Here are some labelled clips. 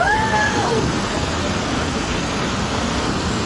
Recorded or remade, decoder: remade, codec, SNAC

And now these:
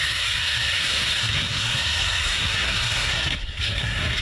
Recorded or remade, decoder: remade, codec, SNAC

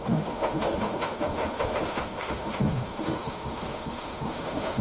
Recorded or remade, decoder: remade, autoencoder, DAC-VAE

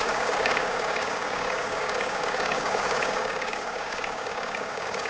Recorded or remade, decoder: remade, codec, DAC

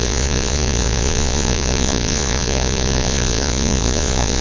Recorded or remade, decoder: remade, vocoder, Vocos